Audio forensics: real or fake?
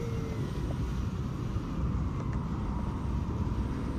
real